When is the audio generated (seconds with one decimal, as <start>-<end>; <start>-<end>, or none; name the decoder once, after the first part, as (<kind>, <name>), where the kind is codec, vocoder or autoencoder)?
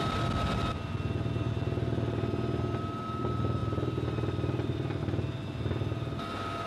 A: 3.6-5.0 (vocoder, BigVGAN v2)